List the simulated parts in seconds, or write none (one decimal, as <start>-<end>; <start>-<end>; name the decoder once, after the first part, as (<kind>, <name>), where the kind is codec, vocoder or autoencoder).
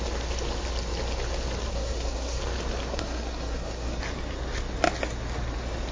1.7-2.4 (codec, SNAC); 2.9-4.0